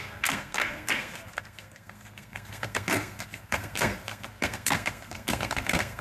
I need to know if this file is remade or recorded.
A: remade